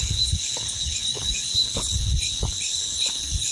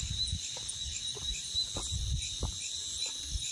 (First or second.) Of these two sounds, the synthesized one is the first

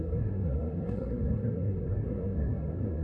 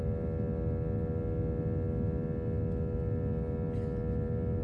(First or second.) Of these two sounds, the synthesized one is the first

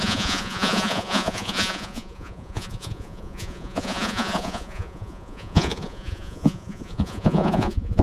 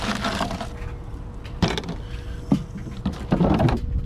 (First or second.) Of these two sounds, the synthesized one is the first